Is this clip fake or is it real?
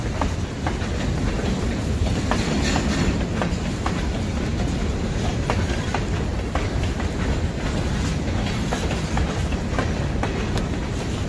fake